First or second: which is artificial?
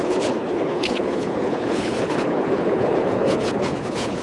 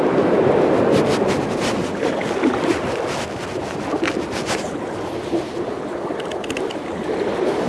first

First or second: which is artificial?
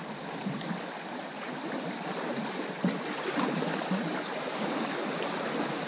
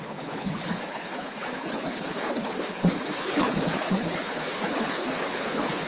second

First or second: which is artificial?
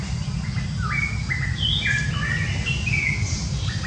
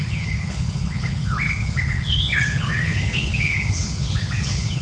second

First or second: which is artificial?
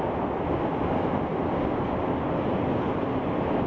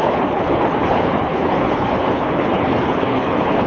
second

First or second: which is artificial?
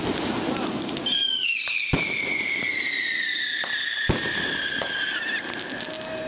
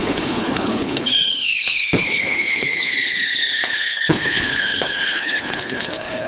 second